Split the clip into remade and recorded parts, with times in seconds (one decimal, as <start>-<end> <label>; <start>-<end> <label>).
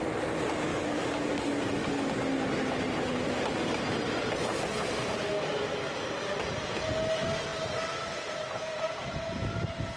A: 0.0-0.7 recorded; 0.7-2.1 remade; 2.1-10.0 recorded